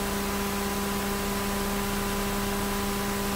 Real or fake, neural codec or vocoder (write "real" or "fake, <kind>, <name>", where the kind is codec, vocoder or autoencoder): real